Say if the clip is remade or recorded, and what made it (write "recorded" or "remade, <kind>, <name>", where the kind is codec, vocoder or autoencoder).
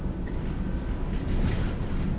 recorded